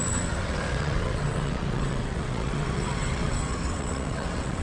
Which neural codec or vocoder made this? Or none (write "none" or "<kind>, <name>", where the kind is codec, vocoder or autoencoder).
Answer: vocoder, WaveNeXt